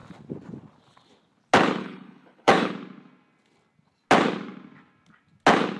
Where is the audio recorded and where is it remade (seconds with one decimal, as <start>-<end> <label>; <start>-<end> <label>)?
0.0-1.8 recorded; 1.8-2.7 remade; 2.7-5.8 recorded